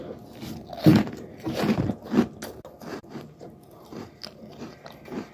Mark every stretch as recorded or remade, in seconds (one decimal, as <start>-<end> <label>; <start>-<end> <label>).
0.0-0.9 recorded; 0.9-1.9 remade; 1.9-2.9 recorded; 2.9-5.3 remade